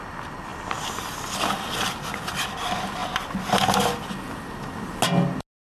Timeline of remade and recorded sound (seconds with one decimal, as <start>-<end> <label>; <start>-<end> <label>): 0.0-5.6 recorded